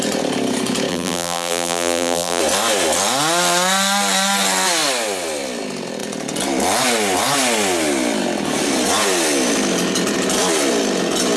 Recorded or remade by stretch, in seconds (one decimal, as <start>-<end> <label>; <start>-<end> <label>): 0.0-0.9 recorded; 0.9-2.4 remade; 2.4-11.4 recorded